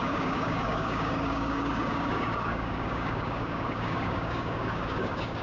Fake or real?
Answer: fake